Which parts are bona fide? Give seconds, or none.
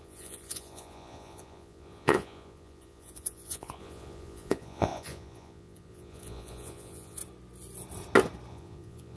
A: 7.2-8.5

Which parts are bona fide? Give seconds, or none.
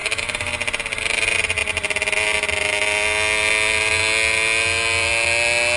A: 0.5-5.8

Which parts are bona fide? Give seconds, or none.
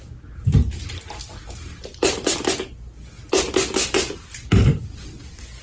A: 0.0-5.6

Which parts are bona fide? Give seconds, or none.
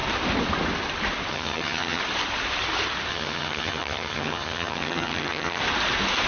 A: 0.0-1.3; 2.0-3.1; 5.6-6.3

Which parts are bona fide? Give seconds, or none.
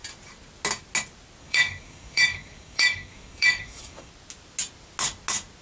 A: 0.0-1.4; 4.1-5.6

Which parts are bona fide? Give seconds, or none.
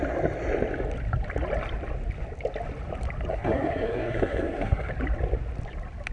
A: 0.0-3.3; 4.9-6.1